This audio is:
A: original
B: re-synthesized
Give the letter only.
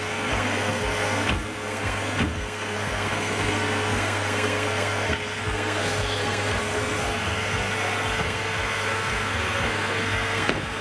B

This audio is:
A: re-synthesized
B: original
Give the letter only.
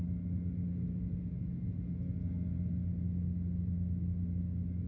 B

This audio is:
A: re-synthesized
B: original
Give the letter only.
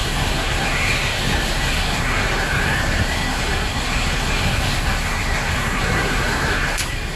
A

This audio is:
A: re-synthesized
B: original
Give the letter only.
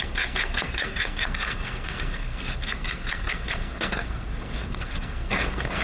A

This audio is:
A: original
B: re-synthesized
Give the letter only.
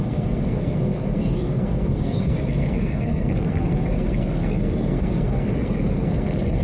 B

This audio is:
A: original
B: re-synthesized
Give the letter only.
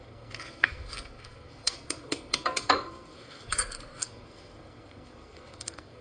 B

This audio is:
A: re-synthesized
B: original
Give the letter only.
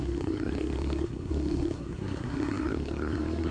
A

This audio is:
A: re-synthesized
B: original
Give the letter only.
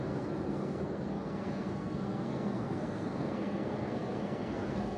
A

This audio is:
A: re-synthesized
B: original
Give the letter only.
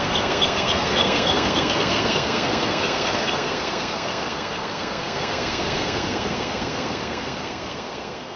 A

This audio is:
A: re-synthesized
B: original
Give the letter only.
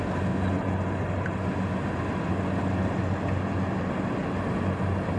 B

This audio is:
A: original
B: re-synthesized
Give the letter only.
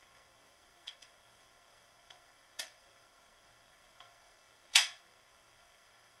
B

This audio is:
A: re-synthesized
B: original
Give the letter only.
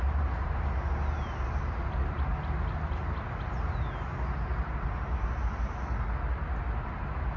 B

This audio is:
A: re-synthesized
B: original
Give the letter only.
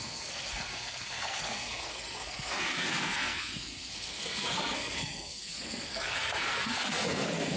A